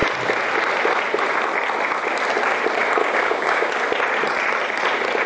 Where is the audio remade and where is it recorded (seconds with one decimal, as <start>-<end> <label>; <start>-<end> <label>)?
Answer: 0.0-3.0 recorded; 3.0-3.7 remade; 3.7-5.3 recorded